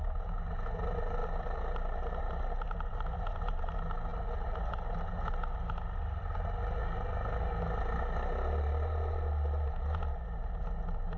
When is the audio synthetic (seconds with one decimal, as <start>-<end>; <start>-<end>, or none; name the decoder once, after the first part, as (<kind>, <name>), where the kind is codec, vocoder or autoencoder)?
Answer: none